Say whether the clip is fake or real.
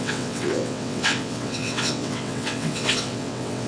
fake